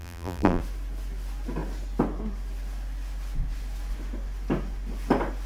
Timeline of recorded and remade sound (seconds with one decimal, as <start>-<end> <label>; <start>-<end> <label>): 0.0-0.6 remade; 0.6-5.5 recorded